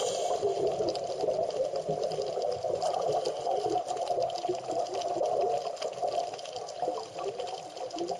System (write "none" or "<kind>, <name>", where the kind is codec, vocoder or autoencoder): none